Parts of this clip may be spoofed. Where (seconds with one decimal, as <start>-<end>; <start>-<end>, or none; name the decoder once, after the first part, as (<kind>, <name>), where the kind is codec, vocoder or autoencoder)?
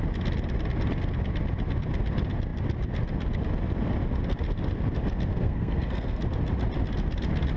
5.3-6.2 (codec, SNAC)